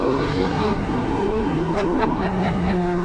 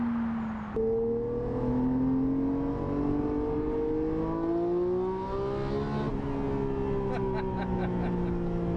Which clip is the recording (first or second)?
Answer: second